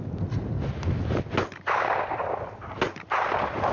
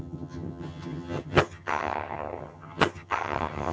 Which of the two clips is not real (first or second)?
second